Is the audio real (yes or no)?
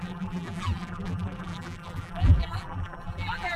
no